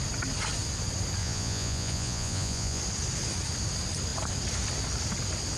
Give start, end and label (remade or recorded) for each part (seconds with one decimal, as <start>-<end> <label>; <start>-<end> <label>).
0.0-1.2 recorded; 1.2-2.8 remade; 2.8-5.6 recorded